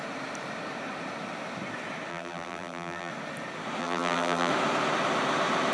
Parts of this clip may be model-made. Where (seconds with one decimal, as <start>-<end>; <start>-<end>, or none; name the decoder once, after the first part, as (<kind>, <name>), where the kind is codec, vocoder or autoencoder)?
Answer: 2.1-3.1 (vocoder, BigVGAN v2); 3.8-4.5